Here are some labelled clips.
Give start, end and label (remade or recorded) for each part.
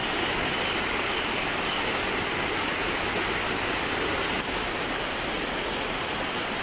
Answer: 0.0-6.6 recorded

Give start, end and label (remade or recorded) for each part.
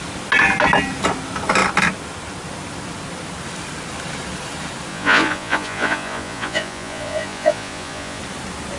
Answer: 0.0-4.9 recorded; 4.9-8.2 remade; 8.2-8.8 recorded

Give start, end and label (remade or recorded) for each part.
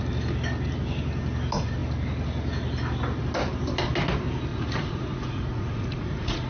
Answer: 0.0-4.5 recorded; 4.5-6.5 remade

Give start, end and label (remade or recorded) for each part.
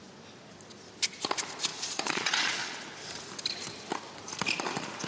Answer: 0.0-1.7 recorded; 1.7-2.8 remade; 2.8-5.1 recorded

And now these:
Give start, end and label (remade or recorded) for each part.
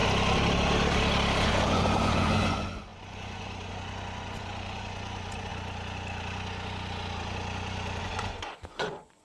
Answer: 0.0-1.4 recorded; 1.4-5.5 remade; 5.5-8.0 recorded; 8.0-9.2 remade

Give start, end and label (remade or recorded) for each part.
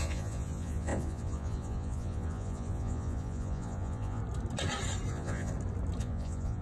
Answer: 0.0-4.2 remade; 4.2-5.1 recorded; 5.1-5.5 remade; 5.5-6.0 recorded; 6.0-6.6 remade